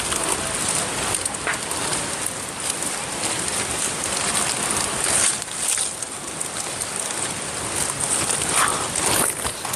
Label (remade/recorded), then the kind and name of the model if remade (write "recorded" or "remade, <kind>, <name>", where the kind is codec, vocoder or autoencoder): recorded